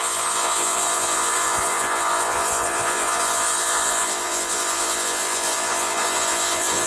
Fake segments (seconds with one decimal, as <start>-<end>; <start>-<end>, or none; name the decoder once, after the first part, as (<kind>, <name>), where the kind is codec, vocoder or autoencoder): 0.0-6.9 (vocoder, Vocos)